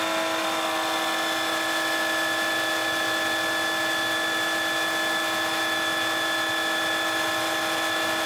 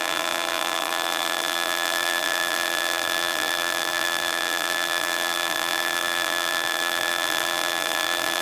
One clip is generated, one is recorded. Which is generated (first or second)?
second